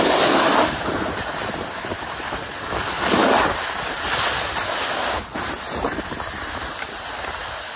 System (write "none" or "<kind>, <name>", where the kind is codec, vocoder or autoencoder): none